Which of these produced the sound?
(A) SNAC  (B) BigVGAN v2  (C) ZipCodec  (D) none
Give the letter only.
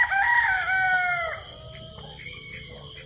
D